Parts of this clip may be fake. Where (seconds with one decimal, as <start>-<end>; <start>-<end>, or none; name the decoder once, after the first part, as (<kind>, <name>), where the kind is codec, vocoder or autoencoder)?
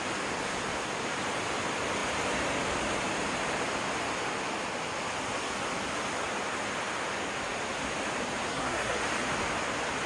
8.5-9.0 (codec, SNAC)